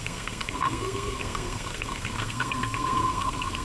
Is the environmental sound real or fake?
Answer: fake